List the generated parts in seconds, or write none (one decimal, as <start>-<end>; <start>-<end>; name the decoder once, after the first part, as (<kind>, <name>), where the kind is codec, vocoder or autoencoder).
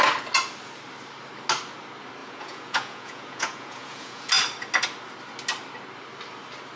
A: 2.2-4.3 (vocoder, Vocos)